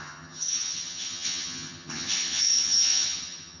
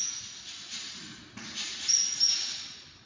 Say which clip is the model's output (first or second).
first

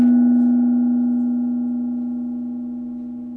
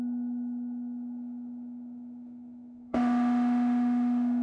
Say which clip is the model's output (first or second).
second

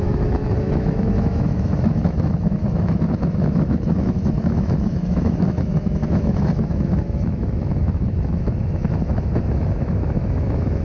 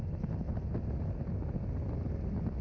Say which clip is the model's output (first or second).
first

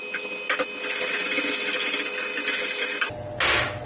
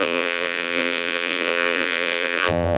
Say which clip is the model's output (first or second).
second